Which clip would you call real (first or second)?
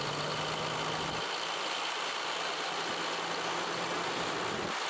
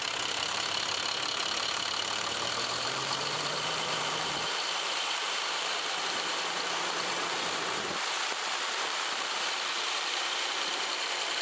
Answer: first